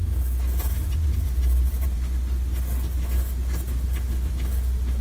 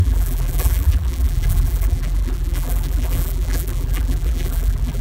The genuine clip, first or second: first